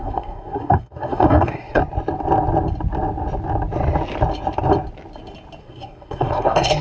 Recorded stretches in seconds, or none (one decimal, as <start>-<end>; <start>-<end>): 1.8-5.6